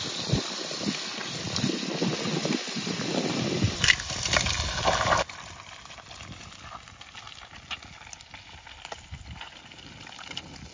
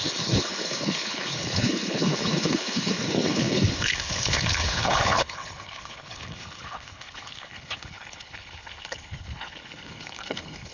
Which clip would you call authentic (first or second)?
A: first